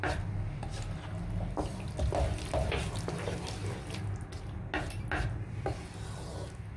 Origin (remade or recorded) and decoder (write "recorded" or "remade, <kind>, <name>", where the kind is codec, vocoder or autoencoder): recorded